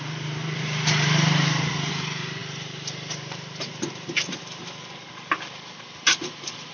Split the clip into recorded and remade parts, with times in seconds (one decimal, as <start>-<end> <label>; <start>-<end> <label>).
0.0-6.7 remade